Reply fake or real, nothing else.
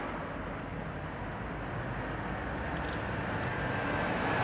real